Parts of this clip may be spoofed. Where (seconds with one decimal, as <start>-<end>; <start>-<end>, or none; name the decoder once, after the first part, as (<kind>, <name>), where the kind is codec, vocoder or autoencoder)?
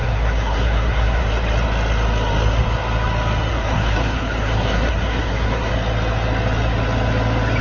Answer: 0.0-1.2 (codec, SNAC); 3.5-5.7